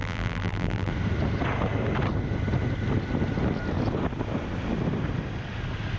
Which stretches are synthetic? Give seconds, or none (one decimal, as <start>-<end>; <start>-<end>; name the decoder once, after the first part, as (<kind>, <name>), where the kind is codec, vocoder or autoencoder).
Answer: 0.0-0.9 (vocoder, BigVGAN v2)